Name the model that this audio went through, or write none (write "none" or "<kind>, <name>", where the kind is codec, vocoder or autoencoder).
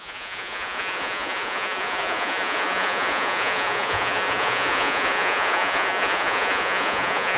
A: vocoder, Vocos